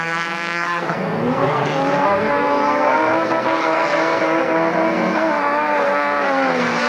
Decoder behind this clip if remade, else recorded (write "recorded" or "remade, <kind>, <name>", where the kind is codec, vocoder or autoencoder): remade, codec, SNAC